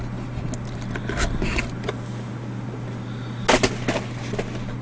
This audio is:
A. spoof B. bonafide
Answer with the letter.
B